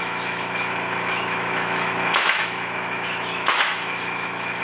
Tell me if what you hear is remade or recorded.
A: remade